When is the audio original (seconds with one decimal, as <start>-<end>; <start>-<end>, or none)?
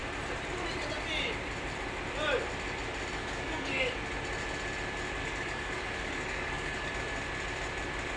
0.0-3.2; 3.9-5.2; 6.9-8.2